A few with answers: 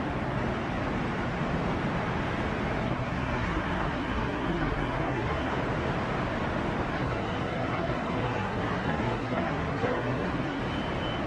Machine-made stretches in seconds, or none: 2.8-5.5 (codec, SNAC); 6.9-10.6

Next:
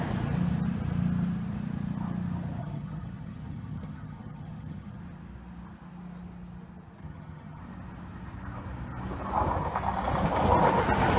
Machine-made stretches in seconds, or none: 2.6-5.0 (vocoder, HiFi-GAN); 7.0-7.6